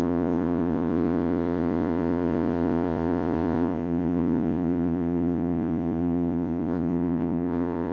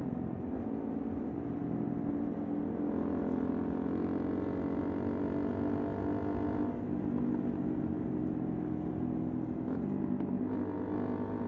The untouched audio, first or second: second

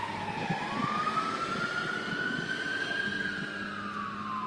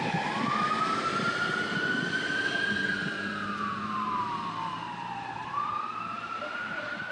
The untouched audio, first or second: first